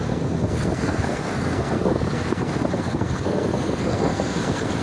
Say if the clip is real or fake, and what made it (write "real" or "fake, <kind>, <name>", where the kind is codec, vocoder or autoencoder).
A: fake, codec, SNAC